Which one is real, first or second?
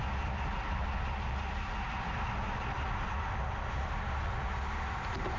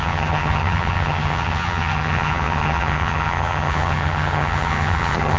first